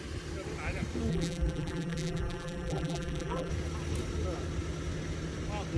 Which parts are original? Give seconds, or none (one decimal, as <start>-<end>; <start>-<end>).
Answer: 0.0-1.1; 3.5-5.8